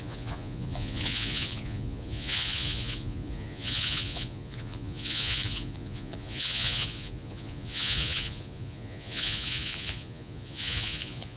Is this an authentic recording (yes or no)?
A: no